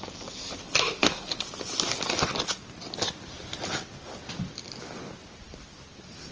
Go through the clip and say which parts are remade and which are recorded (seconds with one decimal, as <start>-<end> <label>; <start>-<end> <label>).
0.0-6.3 recorded